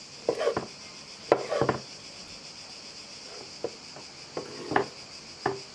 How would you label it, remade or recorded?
recorded